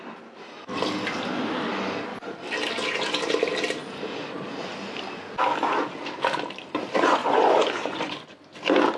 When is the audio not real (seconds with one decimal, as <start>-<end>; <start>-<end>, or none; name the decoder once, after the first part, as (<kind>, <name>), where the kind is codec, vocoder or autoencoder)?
7.2-8.4 (vocoder, Vocos)